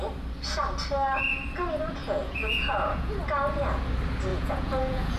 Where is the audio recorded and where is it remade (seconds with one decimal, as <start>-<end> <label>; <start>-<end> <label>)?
0.0-2.0 recorded; 2.0-3.1 remade; 3.1-4.3 recorded; 4.3-5.2 remade